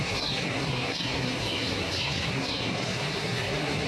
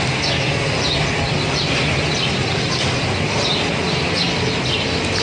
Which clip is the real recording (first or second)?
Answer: second